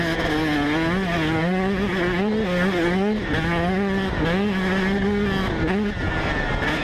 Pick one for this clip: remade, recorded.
recorded